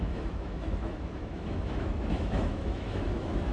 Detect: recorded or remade remade